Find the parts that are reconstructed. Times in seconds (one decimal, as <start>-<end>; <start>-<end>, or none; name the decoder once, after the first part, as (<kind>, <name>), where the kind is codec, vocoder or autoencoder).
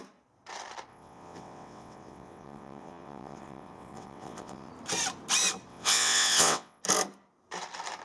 0.9-4.7 (vocoder, WaveNeXt); 5.7-6.8